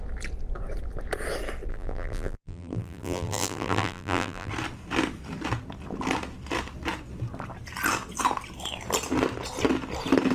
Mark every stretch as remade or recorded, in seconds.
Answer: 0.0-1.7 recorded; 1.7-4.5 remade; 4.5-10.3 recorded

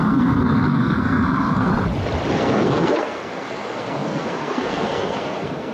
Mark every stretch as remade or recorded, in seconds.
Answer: 0.0-1.7 remade; 1.7-2.3 recorded; 2.3-5.7 remade

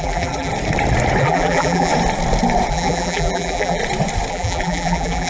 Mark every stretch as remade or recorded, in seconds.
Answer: 0.0-0.5 remade; 0.5-1.2 recorded; 1.2-1.9 remade; 1.9-2.7 recorded; 2.7-3.8 remade; 3.8-4.3 recorded; 4.3-5.3 remade

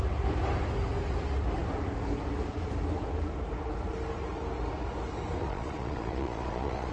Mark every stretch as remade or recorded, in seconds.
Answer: 0.0-5.4 recorded; 5.4-6.9 remade